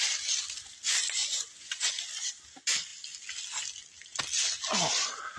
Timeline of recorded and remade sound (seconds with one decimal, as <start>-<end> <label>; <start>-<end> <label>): 0.0-1.2 recorded; 1.2-1.9 remade; 1.9-5.4 recorded